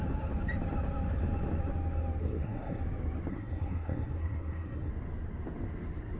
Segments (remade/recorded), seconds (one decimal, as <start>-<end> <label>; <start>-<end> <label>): 0.0-2.2 recorded; 2.2-2.8 remade; 2.8-3.3 recorded; 3.3-4.9 remade; 4.9-6.2 recorded

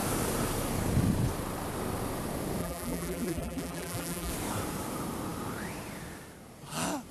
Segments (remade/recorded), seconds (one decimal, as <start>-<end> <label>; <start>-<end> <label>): 0.0-2.6 recorded; 2.6-4.3 remade; 4.3-7.1 recorded

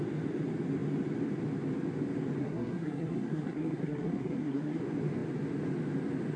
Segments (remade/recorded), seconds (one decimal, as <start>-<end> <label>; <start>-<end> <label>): 0.0-2.4 recorded; 2.4-4.8 remade; 4.8-6.4 recorded

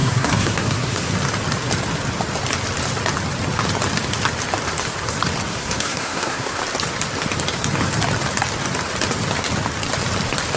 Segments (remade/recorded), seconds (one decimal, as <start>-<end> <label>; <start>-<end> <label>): 0.0-1.1 remade; 1.1-5.5 recorded; 5.5-6.6 remade; 6.6-10.6 recorded

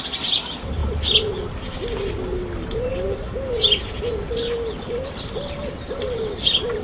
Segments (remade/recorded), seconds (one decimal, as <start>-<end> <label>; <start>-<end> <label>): 0.0-6.8 recorded

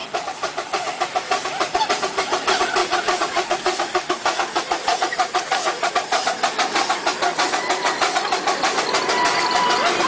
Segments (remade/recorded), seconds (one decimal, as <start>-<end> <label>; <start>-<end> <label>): 0.0-2.8 recorded; 2.8-5.9 remade; 5.9-10.1 recorded

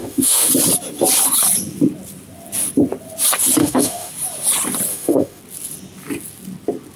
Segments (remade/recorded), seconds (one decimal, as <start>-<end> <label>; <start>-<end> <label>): 0.0-0.5 remade; 0.5-3.6 recorded; 3.6-4.1 remade; 4.1-4.9 recorded; 4.9-5.4 remade; 5.4-7.0 recorded

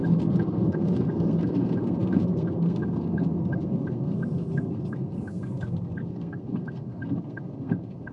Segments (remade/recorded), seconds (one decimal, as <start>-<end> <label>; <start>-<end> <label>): 0.0-8.1 remade